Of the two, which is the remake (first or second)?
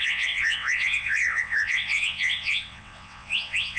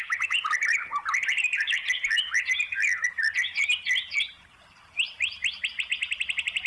first